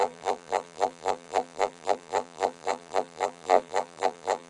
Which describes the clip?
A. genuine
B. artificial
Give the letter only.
B